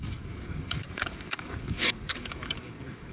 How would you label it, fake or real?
fake